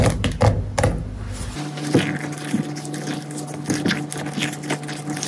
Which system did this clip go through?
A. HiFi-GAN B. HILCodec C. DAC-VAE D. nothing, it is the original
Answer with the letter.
D